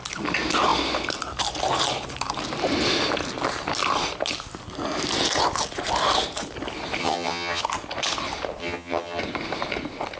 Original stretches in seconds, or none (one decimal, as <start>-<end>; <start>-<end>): 0.0-7.0; 7.6-8.6; 9.2-10.2